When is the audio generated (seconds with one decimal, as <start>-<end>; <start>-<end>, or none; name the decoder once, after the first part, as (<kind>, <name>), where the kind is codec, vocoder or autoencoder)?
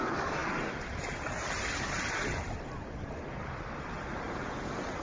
none